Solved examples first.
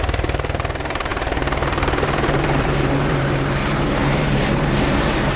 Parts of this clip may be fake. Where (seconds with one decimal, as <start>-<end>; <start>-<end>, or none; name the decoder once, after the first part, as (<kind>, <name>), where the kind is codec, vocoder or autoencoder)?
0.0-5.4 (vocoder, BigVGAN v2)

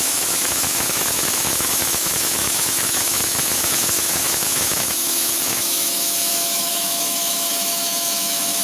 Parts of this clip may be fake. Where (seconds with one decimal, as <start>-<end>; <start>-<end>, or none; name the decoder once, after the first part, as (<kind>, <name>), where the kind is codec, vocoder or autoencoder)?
0.0-8.6 (autoencoder, DAC-VAE)

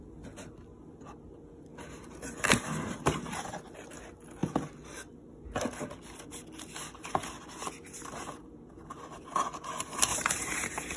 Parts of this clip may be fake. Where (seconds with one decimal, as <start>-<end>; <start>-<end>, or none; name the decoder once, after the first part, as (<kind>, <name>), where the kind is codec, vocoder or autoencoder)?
10.1-11.0 (vocoder, BigVGAN v2)

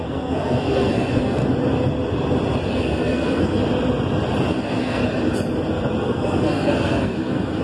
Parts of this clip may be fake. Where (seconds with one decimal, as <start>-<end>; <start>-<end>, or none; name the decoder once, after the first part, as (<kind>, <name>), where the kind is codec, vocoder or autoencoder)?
0.0-1.4 (codec, SNAC); 2.7-3.6; 4.5-5.0; 6.0-7.6